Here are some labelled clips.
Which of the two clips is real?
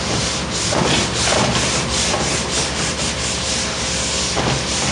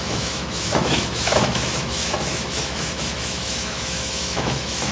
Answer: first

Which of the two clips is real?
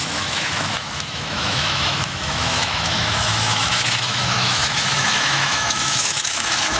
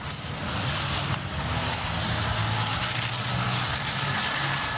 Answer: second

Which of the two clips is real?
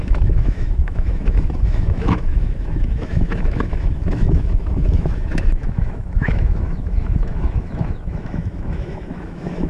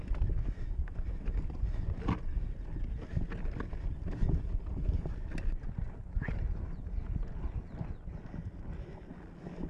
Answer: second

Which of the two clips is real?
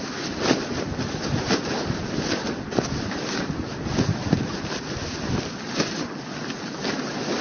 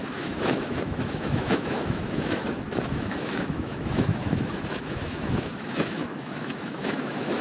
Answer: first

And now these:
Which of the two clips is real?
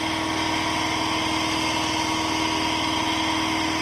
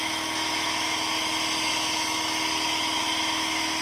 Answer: first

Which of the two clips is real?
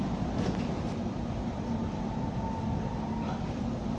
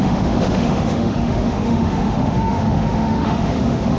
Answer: first